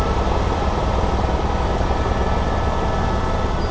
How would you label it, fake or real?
fake